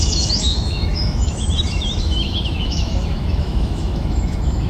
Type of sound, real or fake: fake